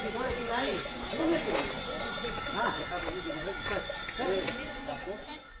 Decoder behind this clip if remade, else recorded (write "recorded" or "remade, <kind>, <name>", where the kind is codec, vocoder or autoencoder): remade, vocoder, Vocos